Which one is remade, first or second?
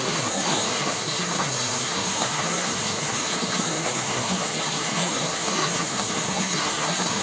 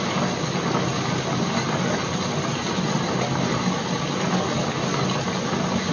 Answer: first